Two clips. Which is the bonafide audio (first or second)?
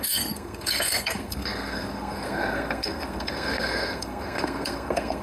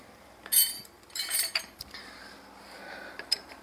second